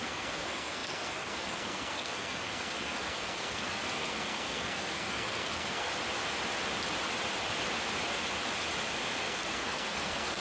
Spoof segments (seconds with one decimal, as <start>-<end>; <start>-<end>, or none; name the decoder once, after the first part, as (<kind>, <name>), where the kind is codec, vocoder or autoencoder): 0.0-5.9 (codec, SNAC); 9.1-10.4

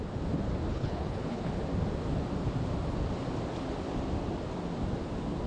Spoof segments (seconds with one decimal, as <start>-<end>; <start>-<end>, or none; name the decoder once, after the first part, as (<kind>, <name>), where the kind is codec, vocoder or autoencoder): 0.7-1.5 (codec, HILCodec)

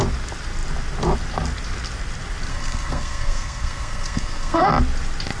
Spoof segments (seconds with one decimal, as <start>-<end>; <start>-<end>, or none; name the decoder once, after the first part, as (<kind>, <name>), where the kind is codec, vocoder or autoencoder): 2.5-4.7 (codec, SNAC)